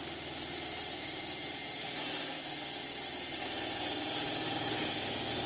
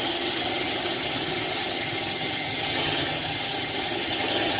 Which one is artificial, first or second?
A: second